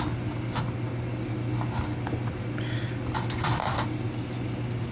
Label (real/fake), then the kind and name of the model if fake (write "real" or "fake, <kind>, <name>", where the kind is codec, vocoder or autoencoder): real